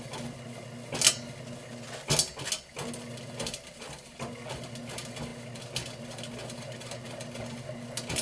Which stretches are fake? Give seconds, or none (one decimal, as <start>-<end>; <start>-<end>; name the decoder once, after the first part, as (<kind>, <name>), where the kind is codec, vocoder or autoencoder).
none